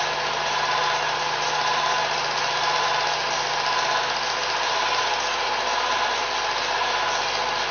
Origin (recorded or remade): recorded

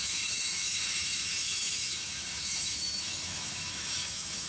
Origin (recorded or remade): remade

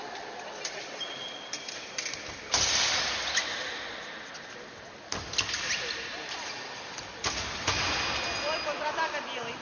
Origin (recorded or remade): recorded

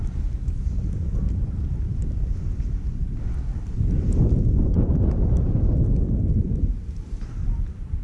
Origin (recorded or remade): recorded